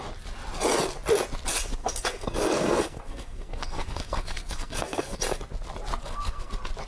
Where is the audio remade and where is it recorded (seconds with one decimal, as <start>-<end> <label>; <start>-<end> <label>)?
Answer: 0.0-1.8 recorded; 1.8-5.2 remade; 5.2-6.0 recorded; 6.0-6.5 remade; 6.5-6.9 recorded